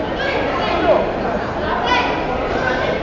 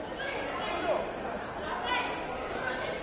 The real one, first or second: second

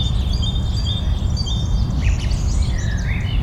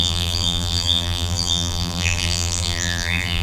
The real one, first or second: first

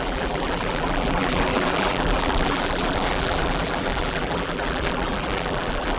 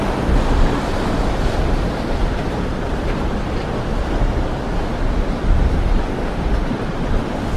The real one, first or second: second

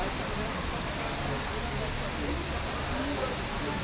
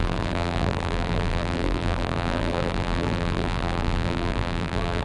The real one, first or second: first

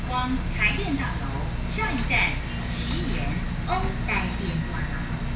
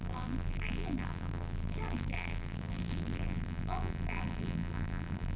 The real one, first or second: first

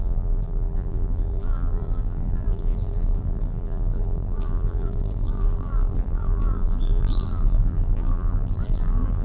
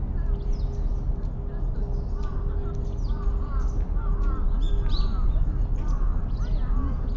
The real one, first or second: second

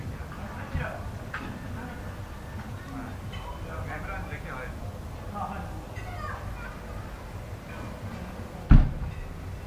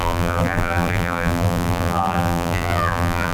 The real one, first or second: first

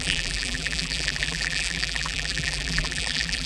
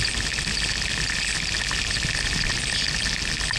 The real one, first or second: second